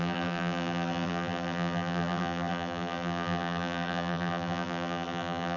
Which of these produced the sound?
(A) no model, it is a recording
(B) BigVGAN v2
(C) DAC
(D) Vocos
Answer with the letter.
B